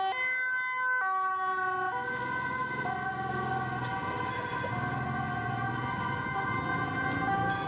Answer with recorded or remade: recorded